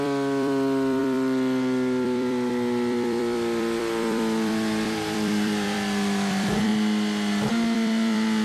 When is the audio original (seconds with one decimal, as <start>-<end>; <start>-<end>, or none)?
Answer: 6.7-7.5